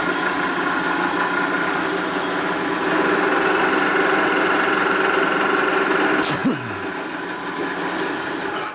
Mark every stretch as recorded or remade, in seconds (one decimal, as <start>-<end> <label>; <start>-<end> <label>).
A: 0.0-8.7 recorded